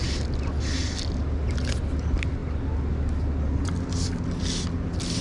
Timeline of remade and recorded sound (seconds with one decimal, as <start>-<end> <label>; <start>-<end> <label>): 0.0-5.2 recorded